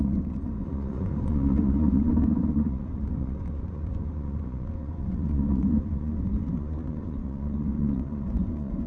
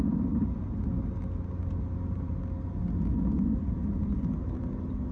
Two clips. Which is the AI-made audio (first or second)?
first